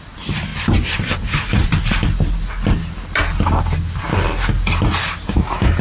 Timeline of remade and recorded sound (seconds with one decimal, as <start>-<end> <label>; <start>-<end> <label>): 0.0-5.8 recorded